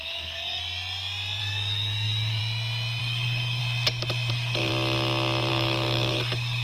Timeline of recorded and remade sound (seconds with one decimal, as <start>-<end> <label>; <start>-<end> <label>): 0.0-0.6 remade; 0.6-1.4 recorded; 1.4-2.4 remade; 2.4-3.0 recorded; 3.0-3.6 remade; 3.6-4.3 recorded; 4.3-4.7 remade; 4.7-5.5 recorded; 5.5-6.6 remade